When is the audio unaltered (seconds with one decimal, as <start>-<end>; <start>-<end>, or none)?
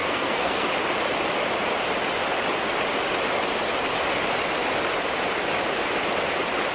0.7-6.7